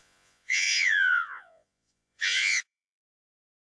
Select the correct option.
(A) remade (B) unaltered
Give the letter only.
A